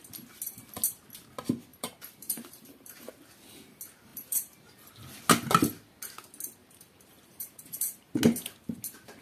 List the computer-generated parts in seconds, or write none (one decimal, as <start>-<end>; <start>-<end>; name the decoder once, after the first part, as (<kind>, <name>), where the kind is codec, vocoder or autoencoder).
1.7-3.1 (vocoder, BigVGAN v2); 4.1-4.9; 6.6-8.2